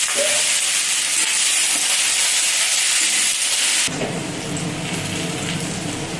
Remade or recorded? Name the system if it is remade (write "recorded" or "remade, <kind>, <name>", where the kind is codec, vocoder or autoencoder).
recorded